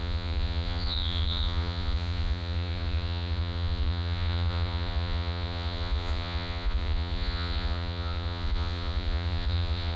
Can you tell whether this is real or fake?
fake